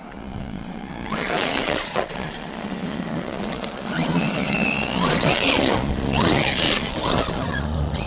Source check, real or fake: fake